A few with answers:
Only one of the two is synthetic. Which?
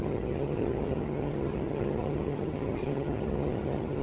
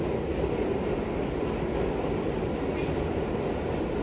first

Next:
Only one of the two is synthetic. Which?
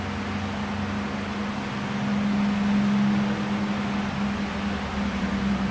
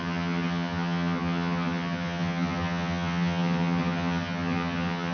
second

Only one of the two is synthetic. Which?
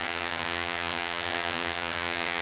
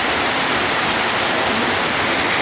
first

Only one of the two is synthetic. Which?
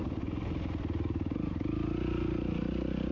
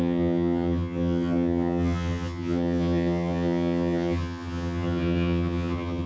second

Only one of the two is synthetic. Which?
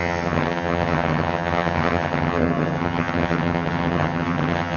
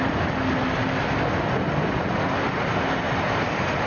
first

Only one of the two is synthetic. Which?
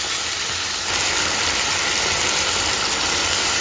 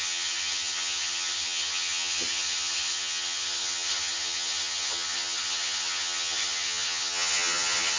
second